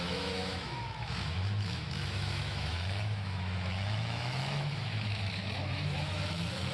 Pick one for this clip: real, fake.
fake